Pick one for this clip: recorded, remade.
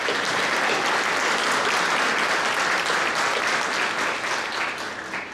recorded